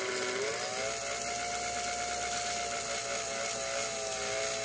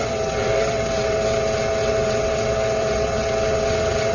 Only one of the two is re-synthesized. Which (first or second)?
second